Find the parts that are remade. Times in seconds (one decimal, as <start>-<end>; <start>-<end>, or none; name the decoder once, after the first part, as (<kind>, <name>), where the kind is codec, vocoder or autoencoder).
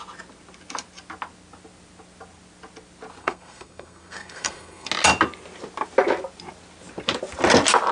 3.2-4.9 (codec, SNAC)